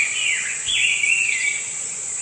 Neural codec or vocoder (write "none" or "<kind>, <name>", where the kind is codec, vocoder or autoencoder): vocoder, Vocos